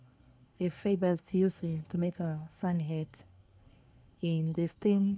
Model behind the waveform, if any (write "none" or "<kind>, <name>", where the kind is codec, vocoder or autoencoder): codec, SNAC